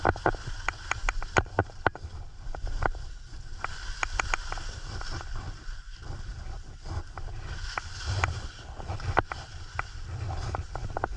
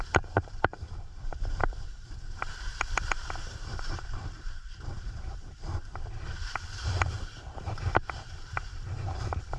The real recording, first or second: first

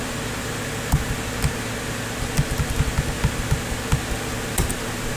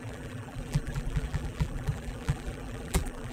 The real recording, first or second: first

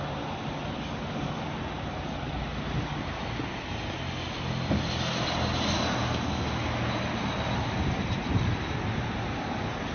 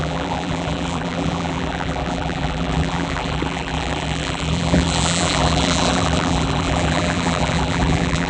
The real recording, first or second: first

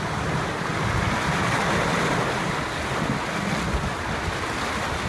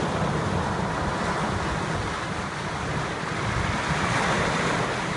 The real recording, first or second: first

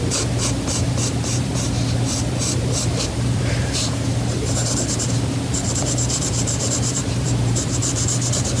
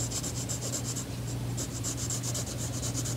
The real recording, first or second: second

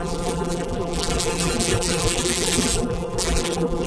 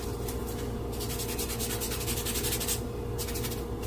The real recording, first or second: second